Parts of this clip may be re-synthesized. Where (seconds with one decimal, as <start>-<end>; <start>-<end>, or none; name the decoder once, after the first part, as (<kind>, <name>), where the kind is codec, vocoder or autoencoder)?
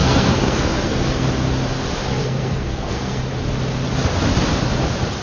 0.0-1.3 (codec, SNAC); 2.2-3.2